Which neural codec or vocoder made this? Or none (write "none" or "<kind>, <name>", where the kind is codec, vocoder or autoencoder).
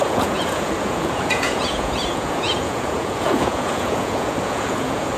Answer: vocoder, Vocos